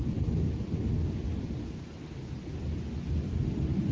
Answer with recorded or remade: recorded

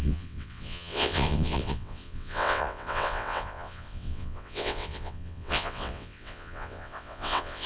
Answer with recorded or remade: remade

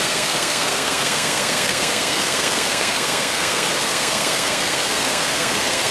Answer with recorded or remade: remade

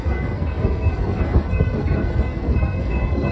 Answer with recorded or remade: remade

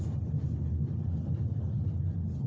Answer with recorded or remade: recorded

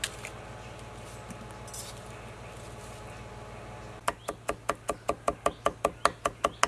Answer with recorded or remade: recorded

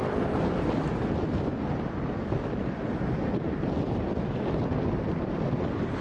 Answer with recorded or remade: recorded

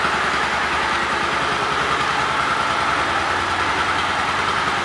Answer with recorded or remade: remade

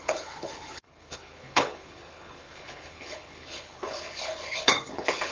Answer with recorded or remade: remade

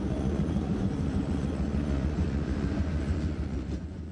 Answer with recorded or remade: remade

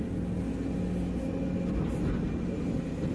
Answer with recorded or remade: recorded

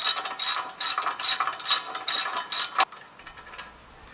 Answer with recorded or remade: recorded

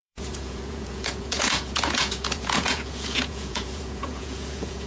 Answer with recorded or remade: remade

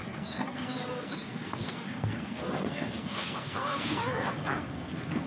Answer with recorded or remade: remade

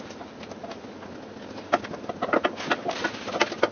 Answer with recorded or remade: recorded